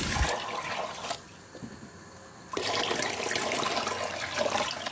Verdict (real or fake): real